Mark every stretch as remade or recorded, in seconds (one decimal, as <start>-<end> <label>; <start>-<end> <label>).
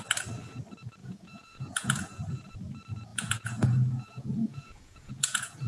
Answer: 0.0-1.0 recorded; 1.0-2.5 remade; 2.5-3.1 recorded; 3.1-5.7 remade